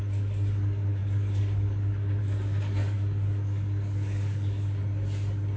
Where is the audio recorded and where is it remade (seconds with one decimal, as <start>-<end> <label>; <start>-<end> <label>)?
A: 0.0-4.8 remade; 4.8-5.6 recorded